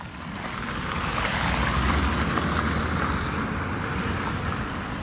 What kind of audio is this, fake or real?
real